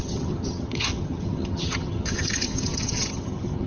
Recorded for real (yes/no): no